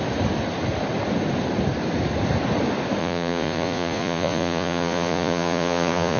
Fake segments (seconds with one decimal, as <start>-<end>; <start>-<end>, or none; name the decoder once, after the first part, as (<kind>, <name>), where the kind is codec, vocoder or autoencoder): 3.0-6.2 (vocoder, Vocos)